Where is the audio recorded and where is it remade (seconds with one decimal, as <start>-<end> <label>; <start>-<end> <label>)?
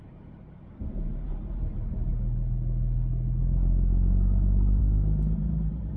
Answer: 0.0-2.1 remade; 2.1-4.8 recorded; 4.8-6.0 remade